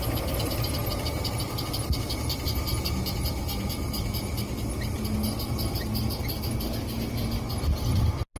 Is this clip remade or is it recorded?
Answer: recorded